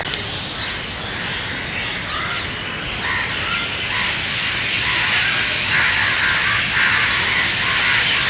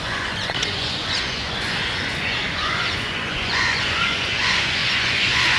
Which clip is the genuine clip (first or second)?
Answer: first